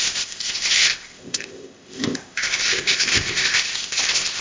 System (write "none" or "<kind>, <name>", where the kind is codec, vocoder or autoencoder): codec, ZipCodec